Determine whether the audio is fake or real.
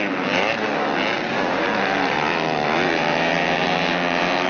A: real